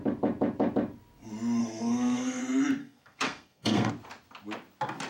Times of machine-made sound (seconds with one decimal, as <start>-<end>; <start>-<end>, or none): 1.6-2.4; 2.8-3.9